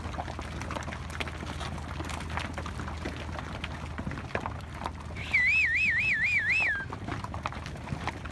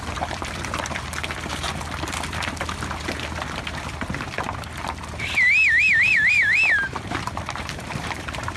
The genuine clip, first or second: first